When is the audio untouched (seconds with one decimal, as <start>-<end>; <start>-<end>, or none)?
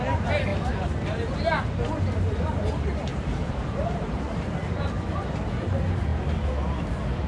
0.0-3.1; 4.5-7.3